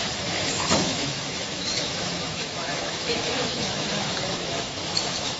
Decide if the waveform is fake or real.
fake